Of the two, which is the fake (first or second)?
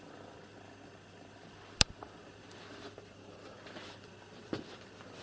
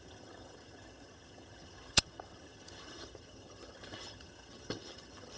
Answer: second